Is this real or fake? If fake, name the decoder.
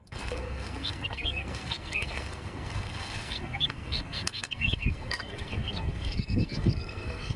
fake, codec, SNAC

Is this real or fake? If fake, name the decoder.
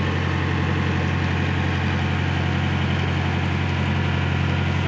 real